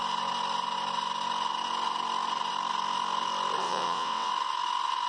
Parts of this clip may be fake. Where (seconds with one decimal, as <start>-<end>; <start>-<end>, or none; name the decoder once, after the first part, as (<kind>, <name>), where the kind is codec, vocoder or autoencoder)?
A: 3.6-4.3 (vocoder, WaveNeXt)